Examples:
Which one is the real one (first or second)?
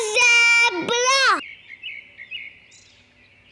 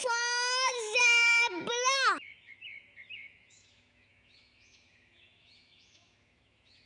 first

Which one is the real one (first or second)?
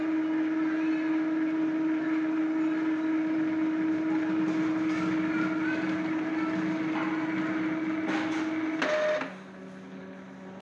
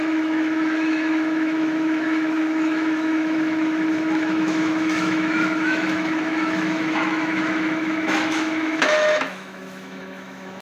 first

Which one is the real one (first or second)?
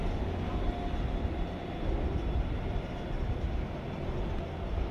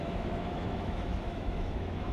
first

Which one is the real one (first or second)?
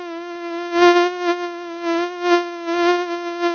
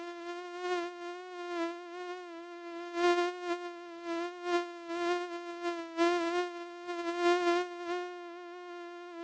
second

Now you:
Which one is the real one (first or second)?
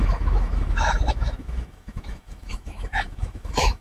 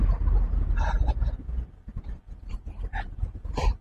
second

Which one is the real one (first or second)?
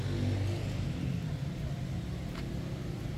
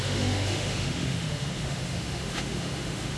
first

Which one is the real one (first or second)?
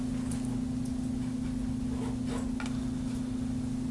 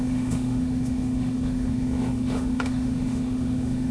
first